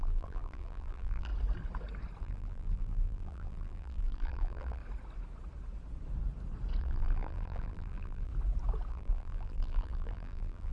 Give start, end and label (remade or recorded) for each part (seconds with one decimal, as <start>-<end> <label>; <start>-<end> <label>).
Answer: 0.0-1.3 remade; 1.3-2.2 recorded; 2.2-4.8 remade; 4.8-6.8 recorded; 6.8-8.3 remade; 8.3-8.9 recorded; 8.9-10.7 remade